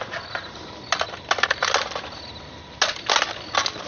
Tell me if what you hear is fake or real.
real